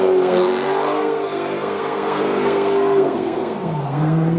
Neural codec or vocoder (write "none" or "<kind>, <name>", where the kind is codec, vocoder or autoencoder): codec, SNAC